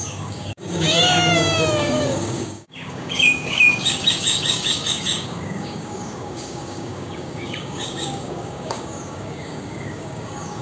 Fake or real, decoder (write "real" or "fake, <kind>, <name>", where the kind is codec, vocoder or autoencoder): fake, codec, DAC